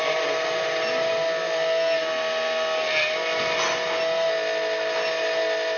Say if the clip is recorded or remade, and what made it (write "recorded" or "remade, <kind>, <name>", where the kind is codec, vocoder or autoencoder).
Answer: recorded